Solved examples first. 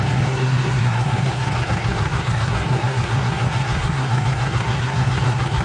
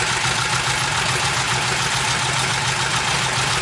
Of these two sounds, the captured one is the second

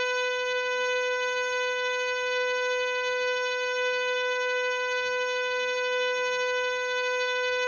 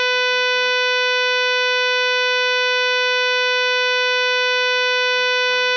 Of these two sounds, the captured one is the second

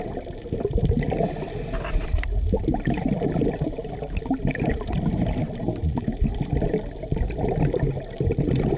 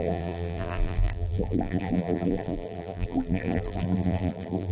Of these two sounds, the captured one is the first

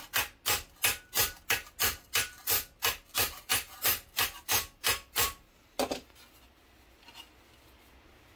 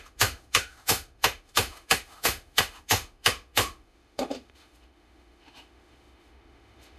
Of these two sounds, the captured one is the first